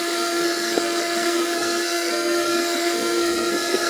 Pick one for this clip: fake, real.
fake